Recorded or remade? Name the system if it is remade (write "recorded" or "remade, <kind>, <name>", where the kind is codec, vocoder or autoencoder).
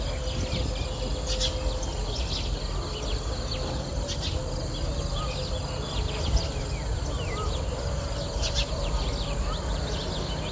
recorded